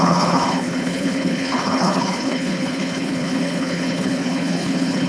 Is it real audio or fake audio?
fake